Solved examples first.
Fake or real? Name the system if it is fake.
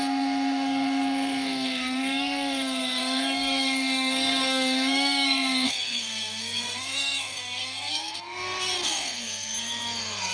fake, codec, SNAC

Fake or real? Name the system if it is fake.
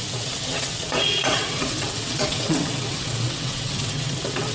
fake, vocoder, WaveNeXt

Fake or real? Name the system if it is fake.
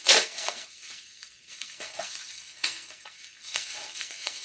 fake, codec, SNAC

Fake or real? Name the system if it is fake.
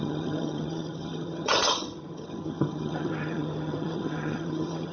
fake, vocoder, HiFi-GAN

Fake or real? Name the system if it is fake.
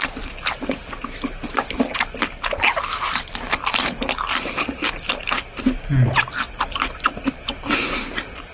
real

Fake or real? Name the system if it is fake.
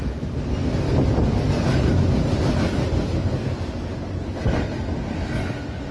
real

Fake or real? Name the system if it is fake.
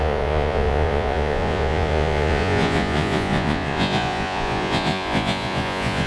fake, vocoder, Vocos